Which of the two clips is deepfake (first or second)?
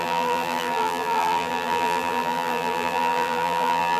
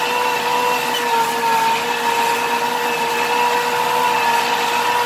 first